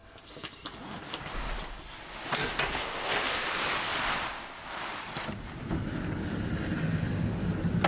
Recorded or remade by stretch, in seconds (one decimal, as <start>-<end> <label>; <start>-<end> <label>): 0.0-7.9 recorded